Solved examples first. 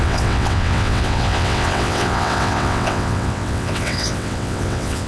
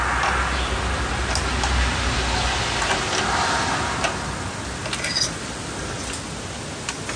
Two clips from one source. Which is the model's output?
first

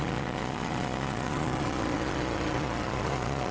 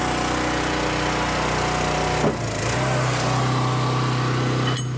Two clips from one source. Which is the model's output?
first